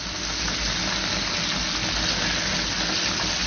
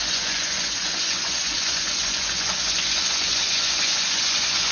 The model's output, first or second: second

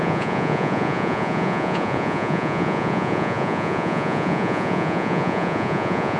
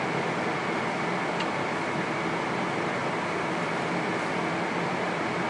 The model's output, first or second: first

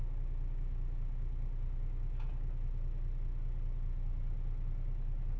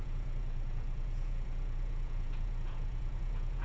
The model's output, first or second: second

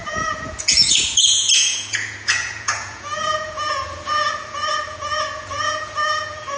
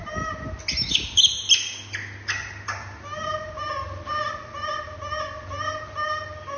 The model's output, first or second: first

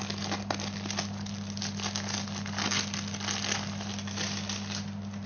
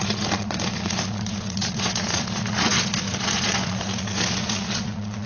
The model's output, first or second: second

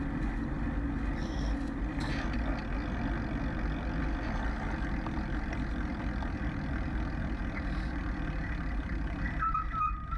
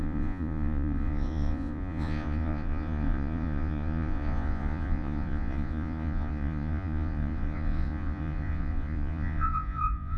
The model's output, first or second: second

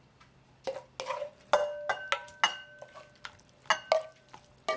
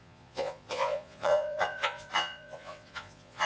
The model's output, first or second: second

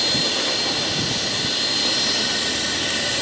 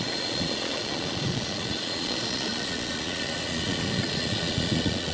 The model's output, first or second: second